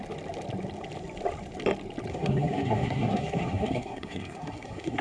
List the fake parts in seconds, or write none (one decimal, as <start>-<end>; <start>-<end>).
2.1-5.0